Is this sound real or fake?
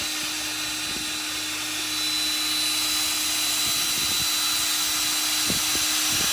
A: real